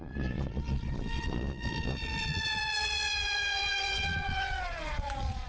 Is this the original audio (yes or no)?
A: no